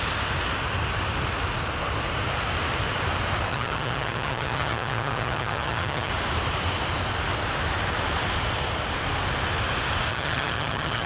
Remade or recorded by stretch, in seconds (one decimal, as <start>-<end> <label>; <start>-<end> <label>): 0.0-3.5 recorded; 3.5-6.1 remade; 6.1-10.1 recorded; 10.1-11.1 remade